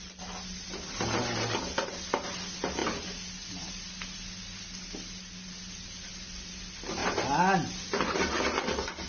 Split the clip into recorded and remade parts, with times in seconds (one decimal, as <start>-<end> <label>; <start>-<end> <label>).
0.0-9.1 recorded